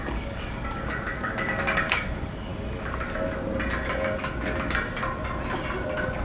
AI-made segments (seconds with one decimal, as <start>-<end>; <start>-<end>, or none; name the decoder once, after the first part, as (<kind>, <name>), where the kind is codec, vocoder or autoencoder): 0.0-2.5 (codec, DAC)

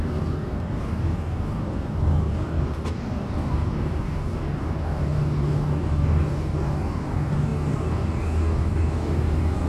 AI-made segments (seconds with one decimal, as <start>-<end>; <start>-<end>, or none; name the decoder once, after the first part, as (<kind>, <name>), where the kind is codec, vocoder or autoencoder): 0.0-9.7 (codec, DAC)